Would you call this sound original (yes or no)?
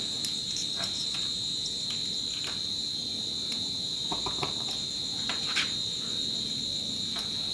yes